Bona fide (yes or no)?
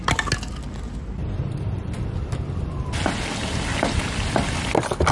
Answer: yes